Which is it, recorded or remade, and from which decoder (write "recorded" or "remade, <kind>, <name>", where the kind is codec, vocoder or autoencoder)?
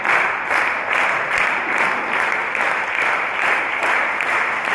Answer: remade, vocoder, BigVGAN v2